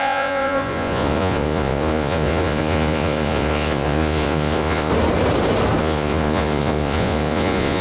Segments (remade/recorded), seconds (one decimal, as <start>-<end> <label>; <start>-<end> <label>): 0.0-4.9 remade; 4.9-5.8 recorded; 5.8-7.8 remade